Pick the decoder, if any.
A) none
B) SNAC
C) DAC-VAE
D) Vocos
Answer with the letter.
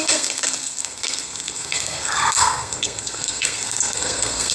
B